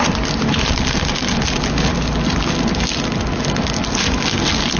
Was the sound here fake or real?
real